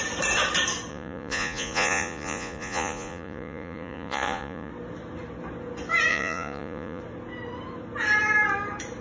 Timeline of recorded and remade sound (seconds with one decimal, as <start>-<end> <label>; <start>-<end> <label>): 0.0-0.9 recorded; 0.9-4.7 remade; 4.7-6.1 recorded; 6.1-7.0 remade; 7.0-9.0 recorded